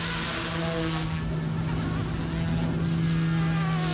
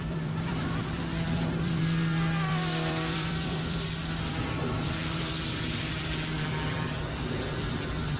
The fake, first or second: second